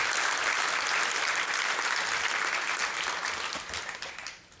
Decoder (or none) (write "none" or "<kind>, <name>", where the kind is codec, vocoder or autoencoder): none